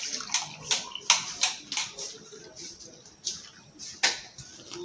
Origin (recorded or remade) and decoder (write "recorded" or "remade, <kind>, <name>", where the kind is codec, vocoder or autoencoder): recorded